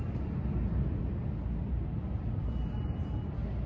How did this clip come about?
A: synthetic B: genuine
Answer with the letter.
B